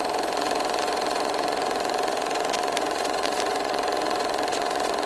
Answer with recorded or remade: remade